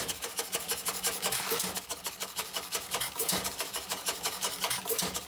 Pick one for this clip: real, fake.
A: fake